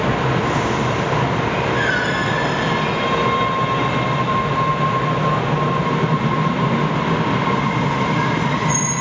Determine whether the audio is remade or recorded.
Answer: recorded